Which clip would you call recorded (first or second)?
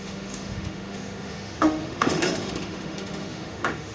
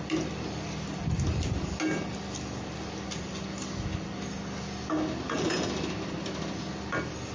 second